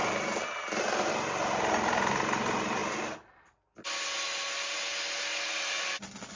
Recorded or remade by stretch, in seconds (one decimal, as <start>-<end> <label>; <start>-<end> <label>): 0.0-6.4 recorded